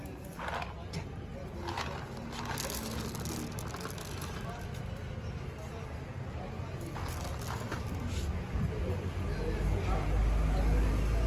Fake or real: real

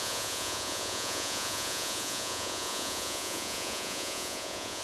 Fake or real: fake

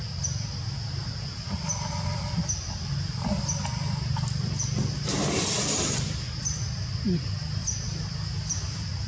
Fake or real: real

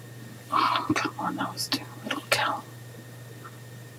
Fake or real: real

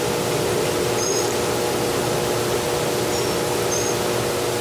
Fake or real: real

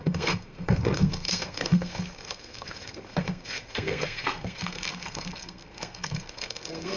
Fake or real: fake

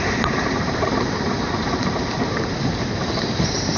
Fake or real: fake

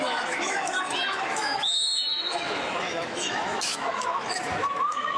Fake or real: fake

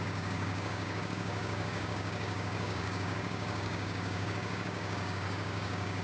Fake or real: fake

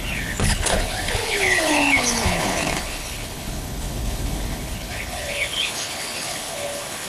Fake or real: fake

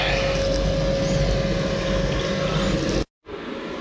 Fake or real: real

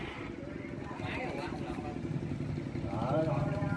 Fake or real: real